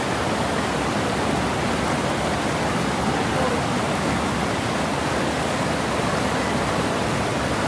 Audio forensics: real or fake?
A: real